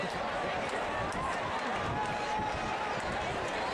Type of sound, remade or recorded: recorded